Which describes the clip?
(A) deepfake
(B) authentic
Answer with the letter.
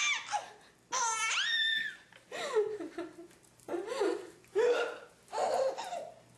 B